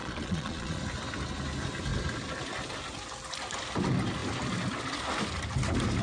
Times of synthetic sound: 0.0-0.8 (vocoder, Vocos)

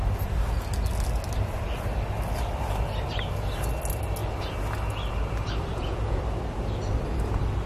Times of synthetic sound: 5.7-6.2 (vocoder, Vocos)